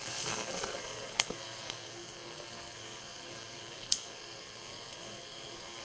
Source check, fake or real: fake